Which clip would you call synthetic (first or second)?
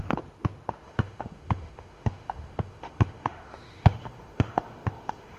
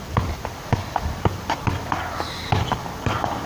first